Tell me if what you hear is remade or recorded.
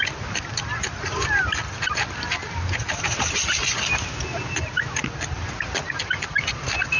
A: recorded